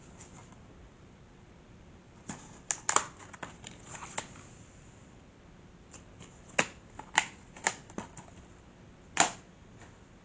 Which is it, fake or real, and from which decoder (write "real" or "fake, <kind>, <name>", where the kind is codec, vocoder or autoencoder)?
real